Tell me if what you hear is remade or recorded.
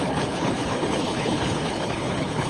remade